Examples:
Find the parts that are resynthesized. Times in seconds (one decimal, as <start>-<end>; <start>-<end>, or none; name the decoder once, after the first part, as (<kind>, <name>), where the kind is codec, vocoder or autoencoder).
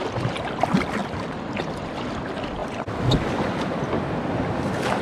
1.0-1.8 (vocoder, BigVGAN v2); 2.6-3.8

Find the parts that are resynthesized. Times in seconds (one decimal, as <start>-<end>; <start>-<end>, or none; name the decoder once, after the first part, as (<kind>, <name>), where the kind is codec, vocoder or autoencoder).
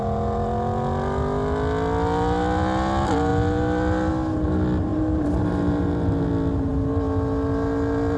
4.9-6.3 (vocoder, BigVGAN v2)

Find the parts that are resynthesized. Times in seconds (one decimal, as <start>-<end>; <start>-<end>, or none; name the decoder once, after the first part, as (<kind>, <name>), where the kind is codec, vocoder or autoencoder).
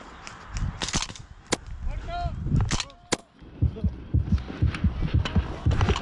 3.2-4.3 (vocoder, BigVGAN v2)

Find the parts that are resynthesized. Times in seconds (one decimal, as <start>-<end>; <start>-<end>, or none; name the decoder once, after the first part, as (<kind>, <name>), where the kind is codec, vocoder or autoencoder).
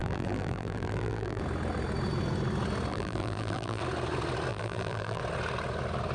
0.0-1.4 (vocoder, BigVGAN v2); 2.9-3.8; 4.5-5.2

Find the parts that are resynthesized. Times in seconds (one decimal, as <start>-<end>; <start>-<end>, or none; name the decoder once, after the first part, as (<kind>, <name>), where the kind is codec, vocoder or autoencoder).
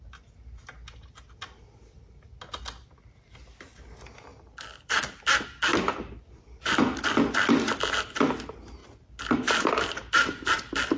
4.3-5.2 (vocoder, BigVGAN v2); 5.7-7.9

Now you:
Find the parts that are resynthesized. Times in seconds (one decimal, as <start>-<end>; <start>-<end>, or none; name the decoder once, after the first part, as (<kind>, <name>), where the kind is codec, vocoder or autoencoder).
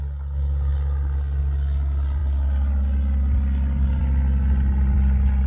none